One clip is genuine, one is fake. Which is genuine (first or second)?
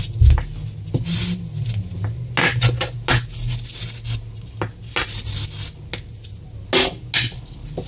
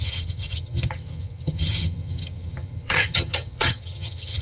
first